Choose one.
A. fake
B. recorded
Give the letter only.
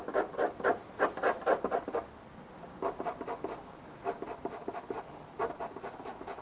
B